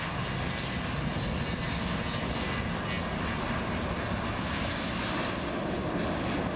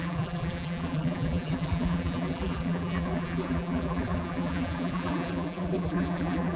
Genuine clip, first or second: first